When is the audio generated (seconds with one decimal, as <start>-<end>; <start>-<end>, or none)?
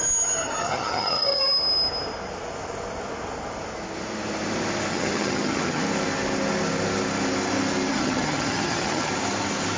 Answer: 0.6-1.4; 4.9-5.8; 7.9-9.1